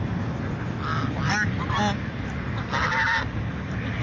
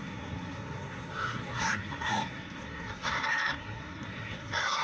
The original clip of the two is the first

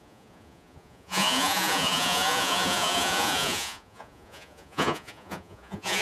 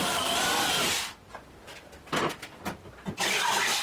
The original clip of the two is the second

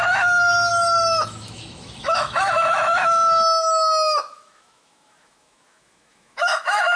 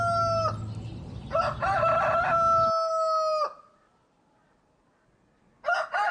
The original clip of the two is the second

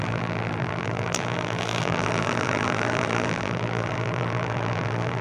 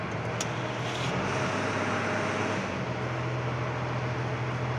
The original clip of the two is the second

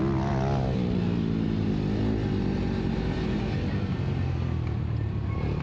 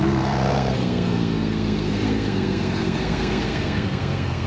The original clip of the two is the first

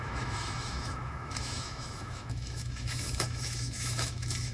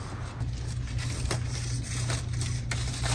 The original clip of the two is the second